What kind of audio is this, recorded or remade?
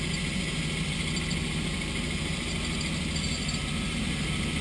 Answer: recorded